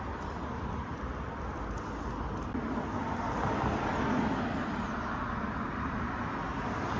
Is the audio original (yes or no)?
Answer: yes